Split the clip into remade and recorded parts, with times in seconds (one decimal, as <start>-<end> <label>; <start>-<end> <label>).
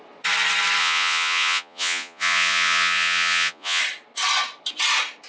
0.0-0.8 recorded; 0.8-3.8 remade; 3.8-5.3 recorded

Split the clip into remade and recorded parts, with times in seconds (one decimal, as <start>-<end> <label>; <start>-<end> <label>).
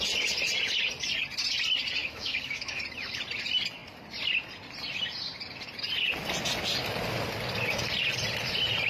0.0-2.0 recorded; 2.0-2.8 remade; 2.8-8.9 recorded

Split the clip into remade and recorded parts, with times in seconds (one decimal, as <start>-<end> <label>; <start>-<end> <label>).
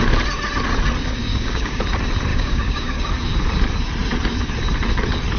0.0-1.3 recorded; 1.3-1.8 remade; 1.8-2.3 recorded; 2.3-3.1 remade; 3.1-5.4 recorded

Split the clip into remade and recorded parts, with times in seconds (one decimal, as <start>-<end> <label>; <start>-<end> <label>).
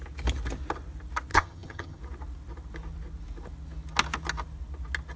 0.0-1.3 recorded; 1.3-2.0 remade; 2.0-5.2 recorded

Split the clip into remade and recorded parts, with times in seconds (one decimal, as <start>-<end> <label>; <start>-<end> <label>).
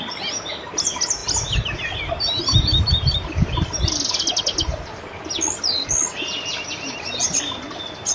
0.0-1.2 recorded; 1.2-3.9 remade; 3.9-8.1 recorded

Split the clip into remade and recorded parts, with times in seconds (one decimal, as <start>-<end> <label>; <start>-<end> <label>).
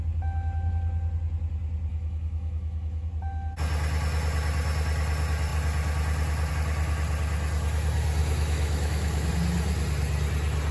0.0-1.9 recorded; 1.9-3.1 remade; 3.1-8.2 recorded; 8.2-9.3 remade; 9.3-10.7 recorded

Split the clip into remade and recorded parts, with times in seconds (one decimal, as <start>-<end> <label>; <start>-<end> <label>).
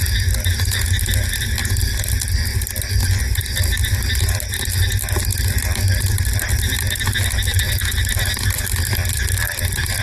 0.0-10.0 recorded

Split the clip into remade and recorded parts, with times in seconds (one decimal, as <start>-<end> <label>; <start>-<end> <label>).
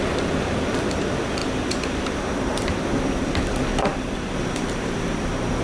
0.0-5.6 remade